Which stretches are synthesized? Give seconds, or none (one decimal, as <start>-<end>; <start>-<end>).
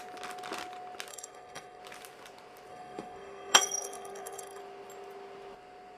1.1-1.8; 2.7-4.6